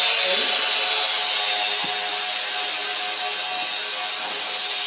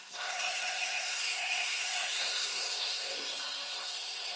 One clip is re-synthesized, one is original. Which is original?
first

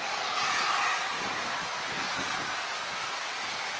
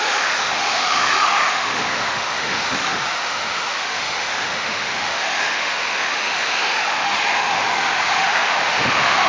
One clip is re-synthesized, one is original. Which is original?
first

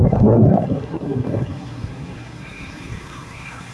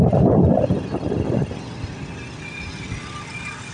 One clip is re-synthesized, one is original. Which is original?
second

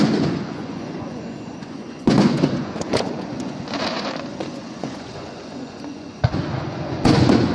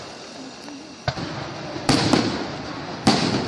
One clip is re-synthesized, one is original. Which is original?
second